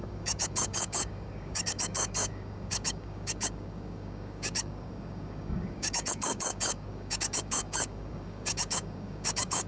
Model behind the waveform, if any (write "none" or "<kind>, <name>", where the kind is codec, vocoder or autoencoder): codec, DAC